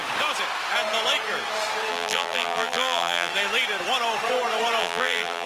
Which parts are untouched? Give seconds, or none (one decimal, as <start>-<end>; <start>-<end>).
0.0-1.9; 3.3-4.8